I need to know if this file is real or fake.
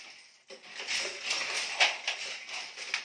real